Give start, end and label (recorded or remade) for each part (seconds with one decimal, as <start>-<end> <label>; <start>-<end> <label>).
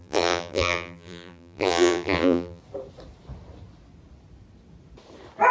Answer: 0.0-2.6 remade; 2.6-5.5 recorded